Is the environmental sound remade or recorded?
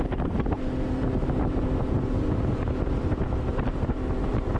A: recorded